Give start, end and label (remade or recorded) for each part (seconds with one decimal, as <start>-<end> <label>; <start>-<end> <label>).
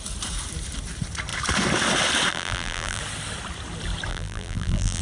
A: 0.0-2.3 recorded; 2.3-3.0 remade; 3.0-4.1 recorded; 4.1-5.0 remade